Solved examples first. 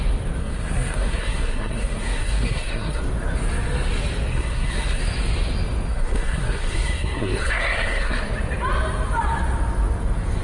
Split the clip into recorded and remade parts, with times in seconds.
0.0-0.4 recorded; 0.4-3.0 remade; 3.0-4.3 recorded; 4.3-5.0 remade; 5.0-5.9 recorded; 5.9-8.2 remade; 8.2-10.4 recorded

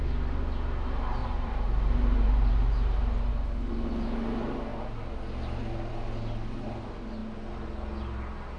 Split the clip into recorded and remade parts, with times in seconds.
0.0-1.2 recorded; 1.2-3.3 remade; 3.3-8.6 recorded

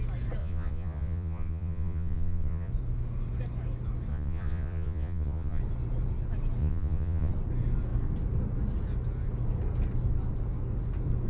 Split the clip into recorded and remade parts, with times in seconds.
0.0-0.4 recorded; 0.4-2.7 remade; 2.7-4.1 recorded; 4.1-5.6 remade; 5.6-6.6 recorded; 6.6-7.3 remade; 7.3-11.3 recorded

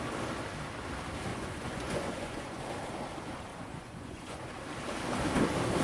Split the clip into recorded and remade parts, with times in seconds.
0.0-1.3 recorded; 1.3-2.6 remade; 2.6-3.5 recorded; 3.5-4.5 remade; 4.5-5.8 recorded

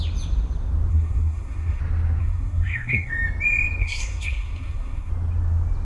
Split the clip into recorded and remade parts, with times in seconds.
0.0-0.9 recorded; 0.9-1.8 remade; 1.8-2.2 recorded; 2.2-3.1 remade; 3.1-3.8 recorded; 3.8-5.1 remade; 5.1-5.8 recorded

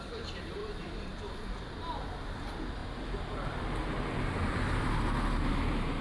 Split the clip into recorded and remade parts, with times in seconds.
0.0-0.6 remade; 0.6-2.3 recorded; 2.3-2.8 remade; 2.8-5.4 recorded; 5.4-6.0 remade

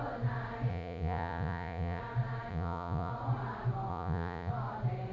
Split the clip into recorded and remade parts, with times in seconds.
0.0-0.7 recorded; 0.7-2.0 remade; 2.0-2.5 recorded; 2.5-3.1 remade; 3.1-3.9 recorded; 3.9-4.5 remade; 4.5-5.1 recorded